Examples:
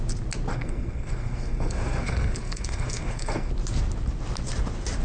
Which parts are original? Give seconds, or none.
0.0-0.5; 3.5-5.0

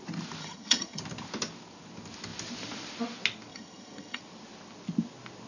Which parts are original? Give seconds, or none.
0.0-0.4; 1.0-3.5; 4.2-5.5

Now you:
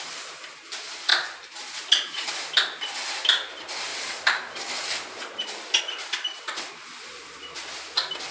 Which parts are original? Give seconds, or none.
0.0-8.3

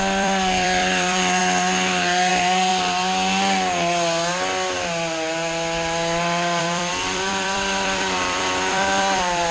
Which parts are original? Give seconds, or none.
1.4-2.3; 2.7-6.6

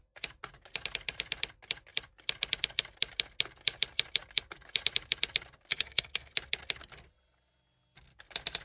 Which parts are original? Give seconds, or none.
0.0-5.7; 6.3-8.6

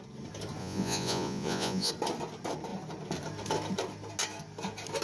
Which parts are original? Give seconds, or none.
0.0-0.6; 1.9-5.0

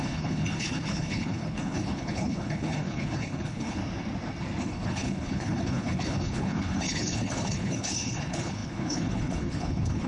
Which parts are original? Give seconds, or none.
3.8-4.6

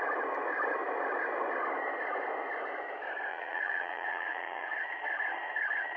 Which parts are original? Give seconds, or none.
0.0-3.3; 4.9-6.0